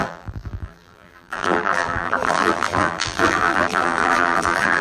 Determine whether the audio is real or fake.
fake